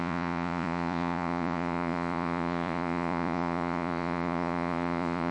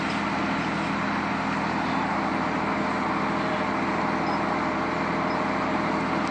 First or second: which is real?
second